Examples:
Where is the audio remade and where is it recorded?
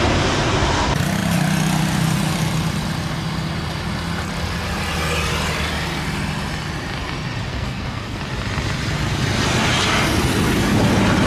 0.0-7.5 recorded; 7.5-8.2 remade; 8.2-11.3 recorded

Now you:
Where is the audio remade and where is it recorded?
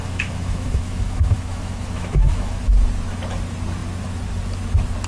0.0-2.6 remade; 2.6-5.1 recorded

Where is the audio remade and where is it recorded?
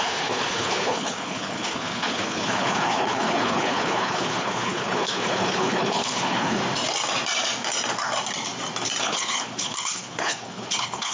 0.0-6.6 remade; 6.6-9.0 recorded; 9.0-11.1 remade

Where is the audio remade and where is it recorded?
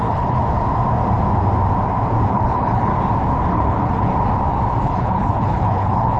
0.0-0.4 remade; 0.4-2.3 recorded; 2.3-2.9 remade; 2.9-3.5 recorded; 3.5-4.1 remade; 4.1-4.8 recorded; 4.8-6.2 remade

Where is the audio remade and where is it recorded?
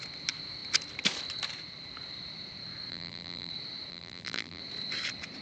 0.0-2.9 recorded; 2.9-3.5 remade; 3.5-3.9 recorded; 3.9-4.6 remade; 4.6-5.4 recorded